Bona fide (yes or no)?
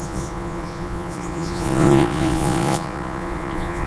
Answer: no